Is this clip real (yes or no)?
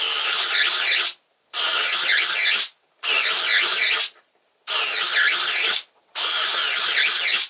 yes